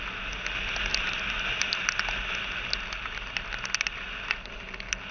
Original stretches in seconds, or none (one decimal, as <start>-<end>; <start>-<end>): 0.0-5.1